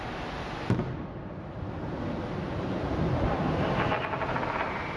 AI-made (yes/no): no